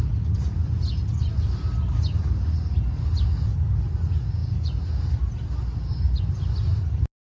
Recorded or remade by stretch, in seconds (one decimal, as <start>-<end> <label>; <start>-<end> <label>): 0.0-7.4 recorded